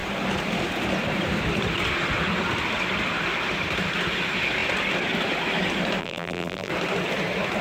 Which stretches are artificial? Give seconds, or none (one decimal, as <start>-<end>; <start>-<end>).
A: 6.0-6.7